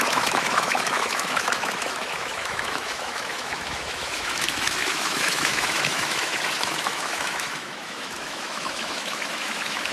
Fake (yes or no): yes